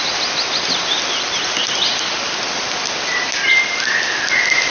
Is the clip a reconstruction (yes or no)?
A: no